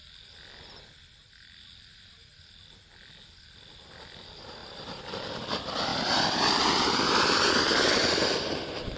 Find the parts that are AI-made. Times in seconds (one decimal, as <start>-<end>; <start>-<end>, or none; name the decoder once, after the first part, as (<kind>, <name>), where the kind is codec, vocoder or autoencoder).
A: 5.9-6.5 (vocoder, BigVGAN v2)